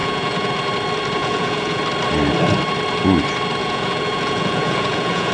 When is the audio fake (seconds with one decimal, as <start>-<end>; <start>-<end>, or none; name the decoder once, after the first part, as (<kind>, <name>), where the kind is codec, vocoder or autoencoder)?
0.0-0.5 (vocoder, Vocos); 1.2-1.8; 3.6-5.3